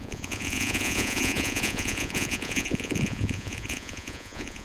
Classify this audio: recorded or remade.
remade